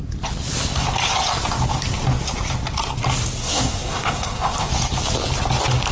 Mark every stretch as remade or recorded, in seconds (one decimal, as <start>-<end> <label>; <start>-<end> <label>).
0.0-3.4 recorded; 3.4-4.7 remade; 4.7-5.9 recorded